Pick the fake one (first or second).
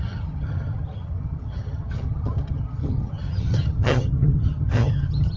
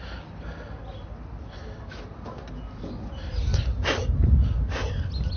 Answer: first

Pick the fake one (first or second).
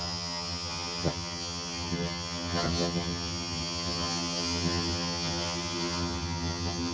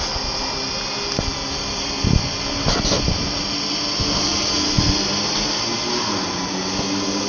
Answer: first